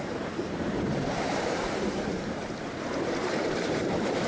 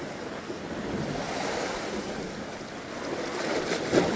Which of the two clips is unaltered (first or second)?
second